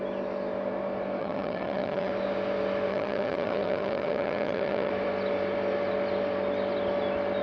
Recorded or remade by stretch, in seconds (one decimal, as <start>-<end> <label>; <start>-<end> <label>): 0.0-1.2 recorded; 1.2-2.1 remade; 2.1-2.9 recorded; 2.9-4.9 remade; 4.9-7.4 recorded